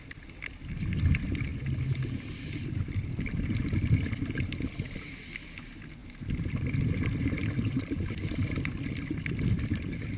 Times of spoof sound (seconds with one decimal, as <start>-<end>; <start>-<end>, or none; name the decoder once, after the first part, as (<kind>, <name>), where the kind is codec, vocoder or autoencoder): none